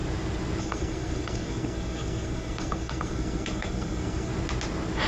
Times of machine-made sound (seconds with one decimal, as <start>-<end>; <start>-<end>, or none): 0.6-4.3